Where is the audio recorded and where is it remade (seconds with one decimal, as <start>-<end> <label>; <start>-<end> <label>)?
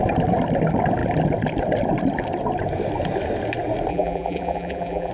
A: 0.0-3.9 recorded; 3.9-5.1 remade